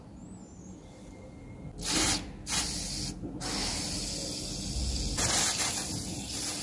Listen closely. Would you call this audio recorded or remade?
recorded